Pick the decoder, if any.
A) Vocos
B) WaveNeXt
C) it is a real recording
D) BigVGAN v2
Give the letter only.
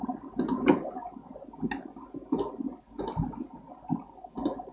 C